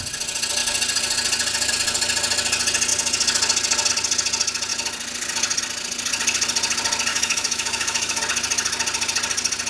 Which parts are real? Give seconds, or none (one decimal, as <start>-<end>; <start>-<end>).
0.0-7.1; 8.2-9.7